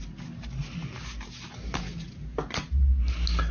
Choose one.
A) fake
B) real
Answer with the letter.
B